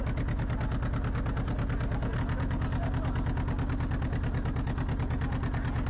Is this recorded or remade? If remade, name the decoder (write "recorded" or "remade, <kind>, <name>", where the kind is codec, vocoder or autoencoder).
recorded